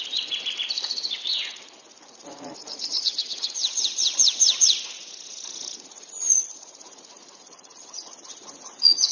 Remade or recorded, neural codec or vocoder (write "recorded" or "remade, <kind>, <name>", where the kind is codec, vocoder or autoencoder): remade, vocoder, Vocos